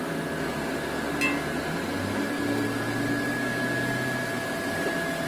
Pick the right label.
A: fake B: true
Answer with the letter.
B